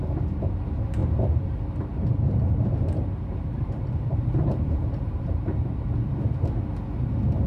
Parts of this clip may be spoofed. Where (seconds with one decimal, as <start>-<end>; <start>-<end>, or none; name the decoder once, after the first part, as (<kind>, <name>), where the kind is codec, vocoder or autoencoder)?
1.0-1.5 (vocoder, BigVGAN v2); 1.9-6.3